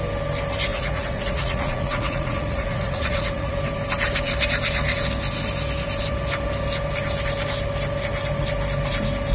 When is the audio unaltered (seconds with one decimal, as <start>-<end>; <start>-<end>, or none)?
0.0-0.7; 3.6-9.3